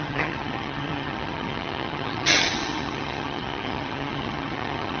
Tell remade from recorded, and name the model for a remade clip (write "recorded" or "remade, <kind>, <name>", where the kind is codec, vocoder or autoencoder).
remade, vocoder, HiFi-GAN